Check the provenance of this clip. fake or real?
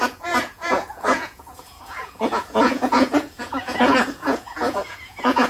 fake